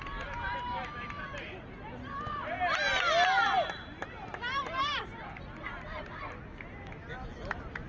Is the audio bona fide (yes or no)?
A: yes